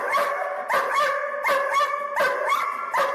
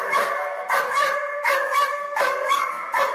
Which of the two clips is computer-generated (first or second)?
second